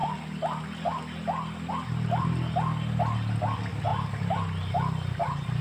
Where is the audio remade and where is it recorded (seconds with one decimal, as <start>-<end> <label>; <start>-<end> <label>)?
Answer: 0.0-5.6 recorded